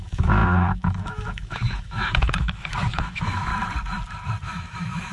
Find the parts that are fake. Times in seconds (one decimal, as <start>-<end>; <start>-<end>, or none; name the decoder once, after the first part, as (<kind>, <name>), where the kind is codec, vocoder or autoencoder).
0.0-3.5 (autoencoder, DAC-VAE); 4.4-5.1